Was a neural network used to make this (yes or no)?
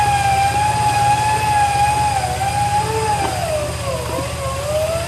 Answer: no